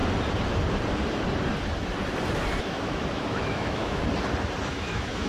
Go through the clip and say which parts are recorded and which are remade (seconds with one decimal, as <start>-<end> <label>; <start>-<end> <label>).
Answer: 0.0-2.6 recorded; 2.6-4.0 remade; 4.0-4.7 recorded; 4.7-5.3 remade